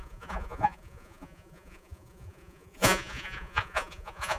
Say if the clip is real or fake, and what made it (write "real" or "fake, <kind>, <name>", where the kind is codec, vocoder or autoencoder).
fake, vocoder, Vocos